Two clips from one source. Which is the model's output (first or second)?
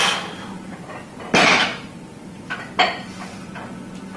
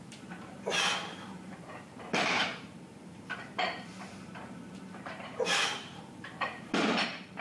second